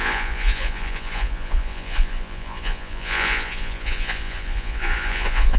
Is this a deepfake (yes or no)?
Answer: yes